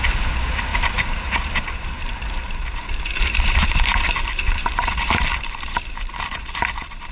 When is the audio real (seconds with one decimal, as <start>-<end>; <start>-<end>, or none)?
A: 0.0-0.7; 2.7-3.6; 6.4-7.1